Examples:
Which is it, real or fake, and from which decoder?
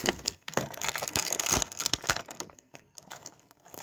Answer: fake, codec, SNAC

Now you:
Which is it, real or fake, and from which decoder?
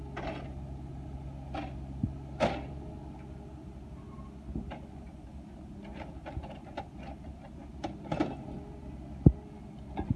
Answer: real